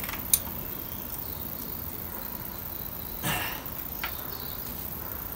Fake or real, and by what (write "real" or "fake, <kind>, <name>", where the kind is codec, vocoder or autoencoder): real